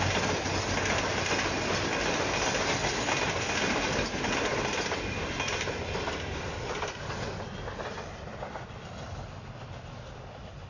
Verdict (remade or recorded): recorded